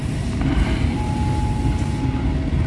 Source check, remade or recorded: recorded